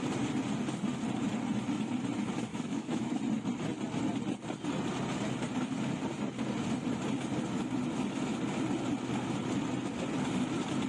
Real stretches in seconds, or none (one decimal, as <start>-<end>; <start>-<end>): 0.0-2.5; 3.2-10.9